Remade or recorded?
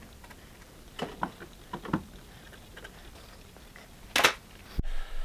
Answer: recorded